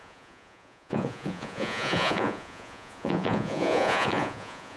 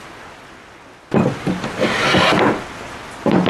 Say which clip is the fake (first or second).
first